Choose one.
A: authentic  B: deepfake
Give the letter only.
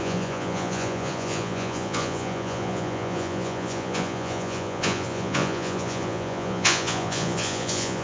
B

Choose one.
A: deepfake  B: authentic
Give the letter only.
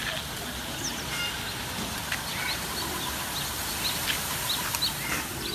B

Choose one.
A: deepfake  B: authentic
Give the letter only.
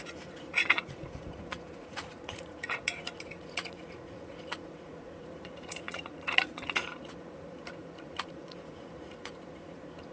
A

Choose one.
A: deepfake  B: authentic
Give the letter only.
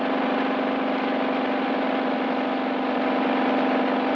B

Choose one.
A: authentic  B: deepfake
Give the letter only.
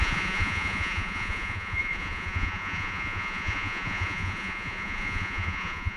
B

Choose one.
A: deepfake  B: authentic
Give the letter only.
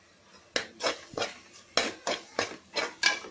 B